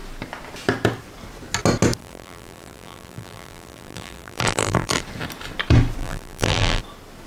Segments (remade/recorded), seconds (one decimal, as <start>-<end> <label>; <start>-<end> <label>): 0.0-2.0 recorded; 2.0-5.0 remade; 5.0-6.0 recorded; 6.0-6.8 remade; 6.8-7.3 recorded